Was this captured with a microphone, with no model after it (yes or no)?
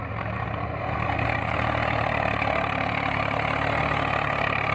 yes